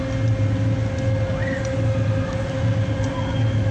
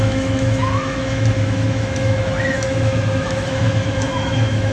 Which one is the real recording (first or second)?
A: first